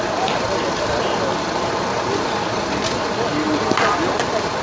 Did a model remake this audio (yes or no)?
yes